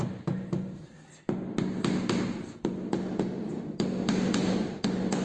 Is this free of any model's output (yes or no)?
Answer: yes